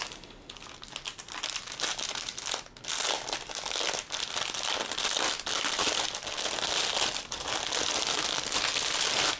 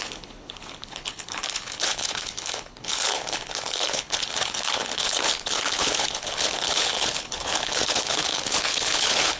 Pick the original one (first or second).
first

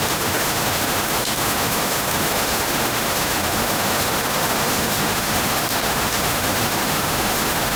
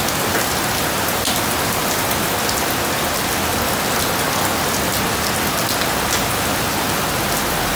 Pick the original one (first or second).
second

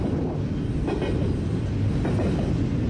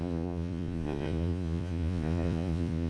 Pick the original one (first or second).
first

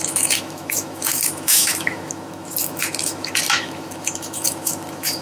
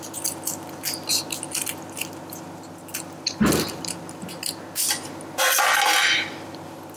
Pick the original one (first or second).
second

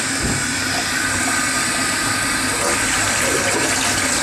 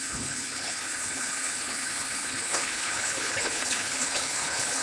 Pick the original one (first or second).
first